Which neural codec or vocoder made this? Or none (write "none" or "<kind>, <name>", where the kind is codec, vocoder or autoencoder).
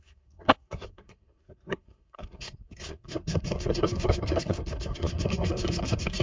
codec, SNAC